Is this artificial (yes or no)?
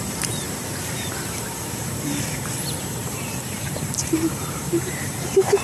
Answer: yes